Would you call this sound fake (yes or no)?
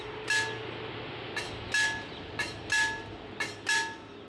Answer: no